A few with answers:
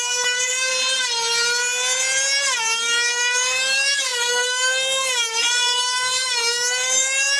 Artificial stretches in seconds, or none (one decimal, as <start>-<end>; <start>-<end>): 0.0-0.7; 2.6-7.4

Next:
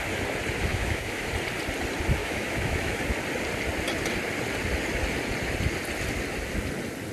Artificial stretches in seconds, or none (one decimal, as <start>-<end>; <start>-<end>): 0.7-1.3; 2.2-3.0

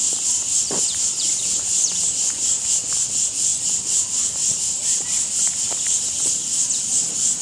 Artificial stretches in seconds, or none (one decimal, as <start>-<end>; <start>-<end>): none

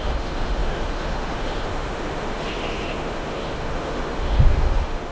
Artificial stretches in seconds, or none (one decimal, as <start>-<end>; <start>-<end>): 0.0-5.1